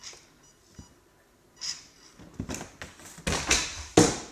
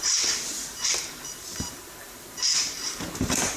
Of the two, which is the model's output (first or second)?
second